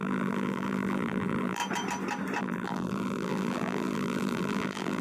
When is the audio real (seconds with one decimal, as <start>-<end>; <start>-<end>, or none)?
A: 1.6-2.4

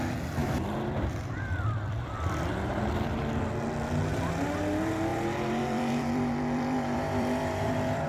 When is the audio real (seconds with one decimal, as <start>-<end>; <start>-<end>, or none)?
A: 0.0-0.4; 3.3-5.1

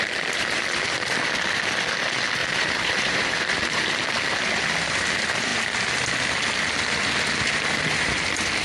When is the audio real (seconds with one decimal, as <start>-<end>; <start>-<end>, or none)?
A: 0.0-2.4; 3.8-8.6

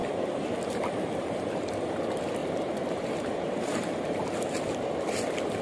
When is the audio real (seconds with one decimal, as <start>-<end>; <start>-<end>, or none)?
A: 2.0-2.4; 3.6-5.6

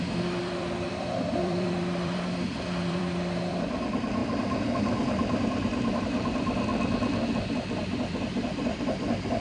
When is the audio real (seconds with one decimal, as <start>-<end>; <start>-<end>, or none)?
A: 6.7-7.5